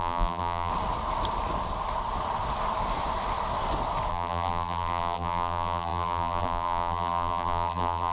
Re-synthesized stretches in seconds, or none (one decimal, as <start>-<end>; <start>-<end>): 0.0-0.7; 4.1-8.1